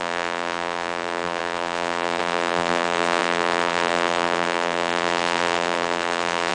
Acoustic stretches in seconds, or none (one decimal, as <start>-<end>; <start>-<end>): none